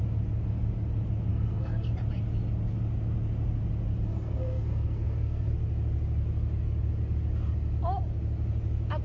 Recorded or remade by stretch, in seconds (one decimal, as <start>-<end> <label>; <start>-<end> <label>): 0.0-1.3 recorded; 1.3-1.9 remade; 1.9-4.1 recorded; 4.1-5.5 remade; 5.5-9.0 recorded